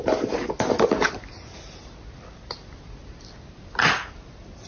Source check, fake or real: real